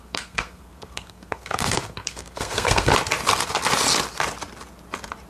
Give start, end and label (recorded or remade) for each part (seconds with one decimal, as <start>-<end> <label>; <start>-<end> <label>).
0.0-2.9 remade; 2.9-5.3 recorded